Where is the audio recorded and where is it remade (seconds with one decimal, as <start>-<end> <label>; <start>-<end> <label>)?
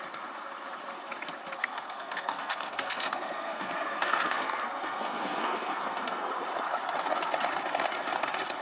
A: 0.0-1.6 recorded; 1.6-6.3 remade; 6.3-8.6 recorded